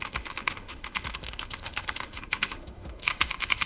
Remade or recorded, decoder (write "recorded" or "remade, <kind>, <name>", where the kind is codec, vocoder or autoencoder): remade, autoencoder, DAC-VAE